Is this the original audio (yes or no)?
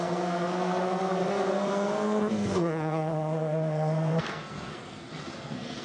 no